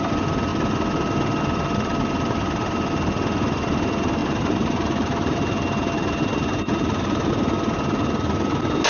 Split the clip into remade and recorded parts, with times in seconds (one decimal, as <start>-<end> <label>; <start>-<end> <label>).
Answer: 0.0-4.2 recorded; 4.2-7.3 remade; 7.3-8.9 recorded